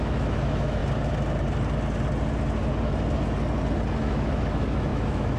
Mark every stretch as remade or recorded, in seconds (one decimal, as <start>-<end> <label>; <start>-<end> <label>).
0.0-0.8 remade; 0.8-4.0 recorded; 4.0-5.4 remade